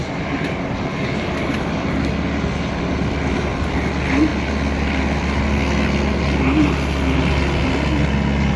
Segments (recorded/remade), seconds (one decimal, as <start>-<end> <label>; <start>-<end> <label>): 0.0-8.6 recorded